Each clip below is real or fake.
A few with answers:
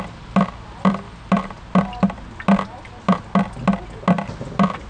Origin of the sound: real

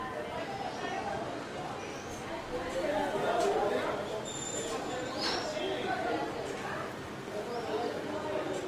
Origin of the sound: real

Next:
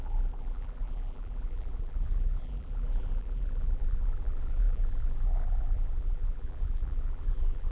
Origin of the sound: fake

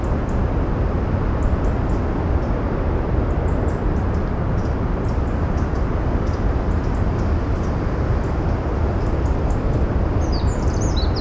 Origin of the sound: real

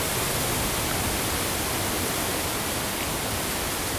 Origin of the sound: real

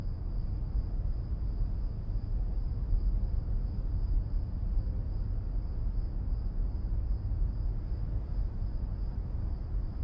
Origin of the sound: real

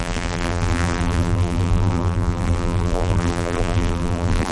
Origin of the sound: fake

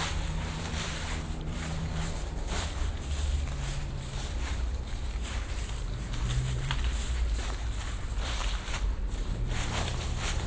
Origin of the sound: fake